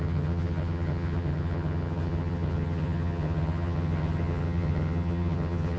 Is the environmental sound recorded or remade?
remade